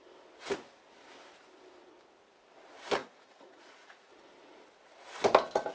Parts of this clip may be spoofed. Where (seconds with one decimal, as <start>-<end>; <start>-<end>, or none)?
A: 3.0-4.1